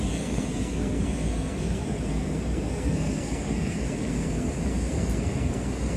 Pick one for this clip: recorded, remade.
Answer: remade